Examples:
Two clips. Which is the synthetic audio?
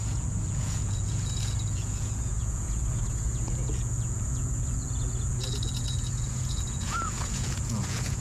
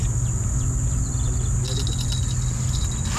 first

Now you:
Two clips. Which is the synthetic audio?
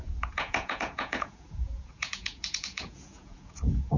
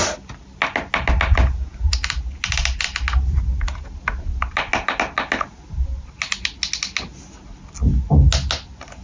first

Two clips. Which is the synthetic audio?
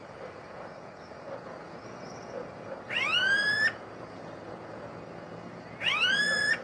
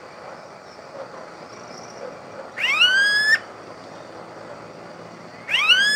first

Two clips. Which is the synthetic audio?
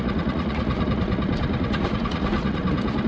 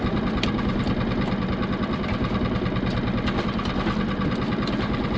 first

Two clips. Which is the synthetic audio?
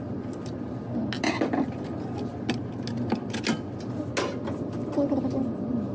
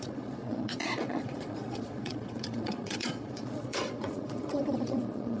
second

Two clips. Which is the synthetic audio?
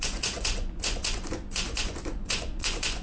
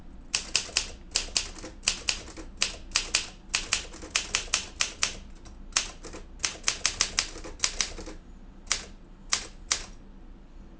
first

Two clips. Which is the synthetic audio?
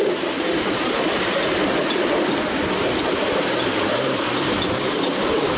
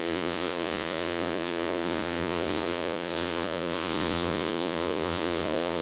second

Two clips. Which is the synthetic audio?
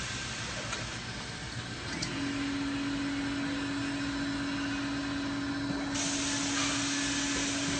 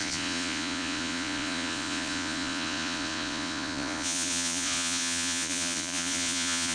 second